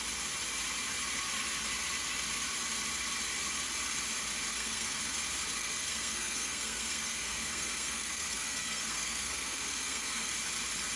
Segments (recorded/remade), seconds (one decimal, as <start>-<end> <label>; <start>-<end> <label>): 0.0-4.5 recorded; 4.5-5.0 remade; 5.0-5.6 recorded; 5.6-10.3 remade; 10.3-11.0 recorded